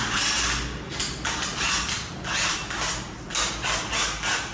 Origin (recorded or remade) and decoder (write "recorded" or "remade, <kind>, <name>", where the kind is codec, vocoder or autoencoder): recorded